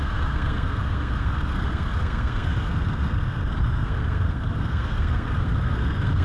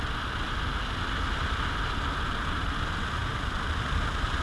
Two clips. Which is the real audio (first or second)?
second